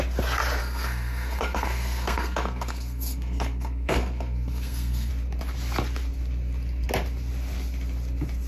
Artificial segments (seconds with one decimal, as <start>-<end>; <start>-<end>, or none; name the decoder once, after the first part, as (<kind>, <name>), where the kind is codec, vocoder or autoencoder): 0.6-5.1 (codec, SNAC)